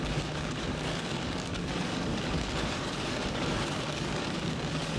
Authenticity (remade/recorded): remade